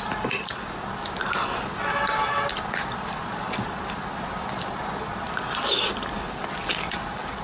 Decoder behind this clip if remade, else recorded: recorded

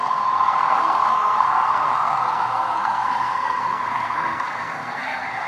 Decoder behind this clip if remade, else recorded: remade, codec, SNAC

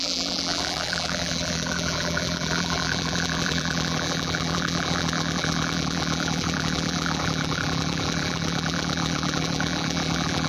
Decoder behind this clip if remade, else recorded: remade, vocoder, BigVGAN v2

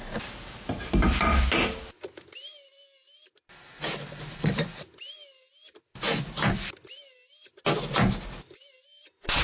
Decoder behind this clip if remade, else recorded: recorded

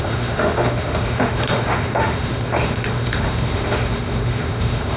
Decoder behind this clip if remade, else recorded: remade, autoencoder, DAC-VAE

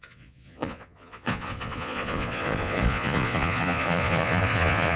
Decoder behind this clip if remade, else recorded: remade, vocoder, Vocos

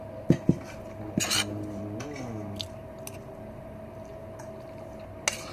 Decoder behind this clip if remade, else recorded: recorded